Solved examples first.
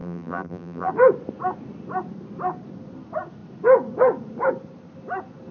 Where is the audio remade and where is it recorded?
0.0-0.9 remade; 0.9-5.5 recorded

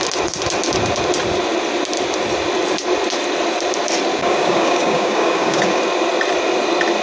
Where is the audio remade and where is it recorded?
0.0-4.1 recorded; 4.1-5.8 remade; 5.8-7.0 recorded

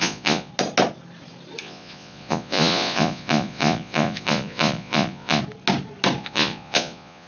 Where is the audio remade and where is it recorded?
0.0-0.5 remade; 0.5-1.6 recorded; 1.6-5.4 remade; 5.4-6.2 recorded; 6.2-7.3 remade

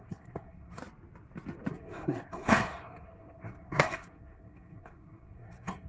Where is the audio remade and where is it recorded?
0.0-0.8 remade; 0.8-1.7 recorded; 1.7-5.9 remade

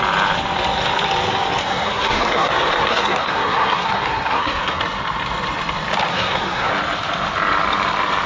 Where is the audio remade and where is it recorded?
0.0-1.6 recorded; 1.6-2.5 remade; 2.5-2.9 recorded; 2.9-4.8 remade; 4.8-6.1 recorded; 6.1-6.7 remade; 6.7-8.3 recorded

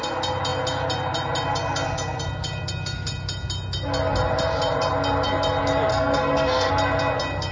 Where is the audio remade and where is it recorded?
0.0-5.9 recorded; 5.9-6.7 remade; 6.7-7.5 recorded